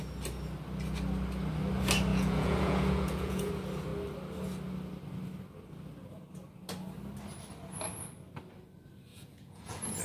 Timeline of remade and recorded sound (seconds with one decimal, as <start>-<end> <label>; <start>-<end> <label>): 0.0-2.1 recorded; 2.1-3.5 remade; 3.5-9.1 recorded; 9.1-10.0 remade